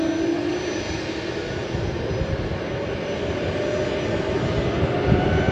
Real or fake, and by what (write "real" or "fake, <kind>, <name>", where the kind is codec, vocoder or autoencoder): real